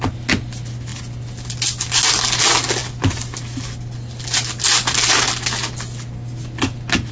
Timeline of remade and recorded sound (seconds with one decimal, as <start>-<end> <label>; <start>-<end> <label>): 0.0-7.1 recorded